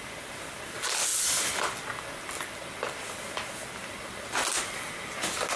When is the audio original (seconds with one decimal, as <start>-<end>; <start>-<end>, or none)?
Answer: 0.0-5.6